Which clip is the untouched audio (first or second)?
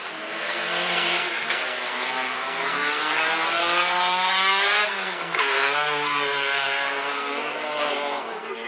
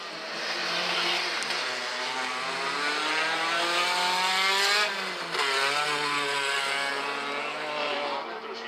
second